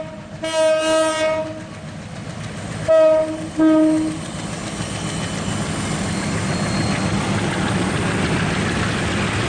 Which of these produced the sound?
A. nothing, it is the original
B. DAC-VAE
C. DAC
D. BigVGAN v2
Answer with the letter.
A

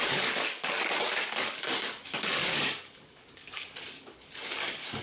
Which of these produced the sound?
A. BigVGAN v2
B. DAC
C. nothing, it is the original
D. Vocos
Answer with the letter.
B